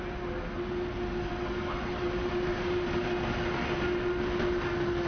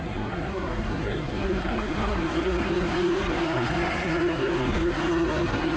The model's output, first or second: second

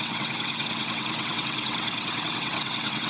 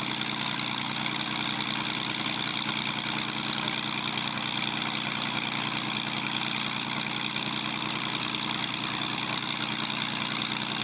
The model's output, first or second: first